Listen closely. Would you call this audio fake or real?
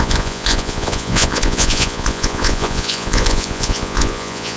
fake